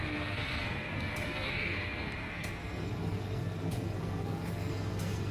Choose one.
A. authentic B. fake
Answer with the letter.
B